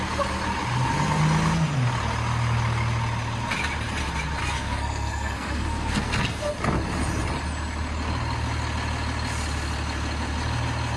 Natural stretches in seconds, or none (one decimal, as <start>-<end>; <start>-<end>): 0.0-4.4; 6.5-11.0